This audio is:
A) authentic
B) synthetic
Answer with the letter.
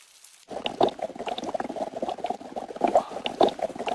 A